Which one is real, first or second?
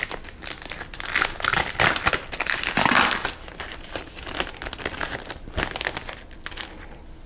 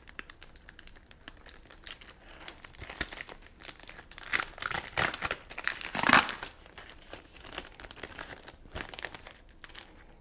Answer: first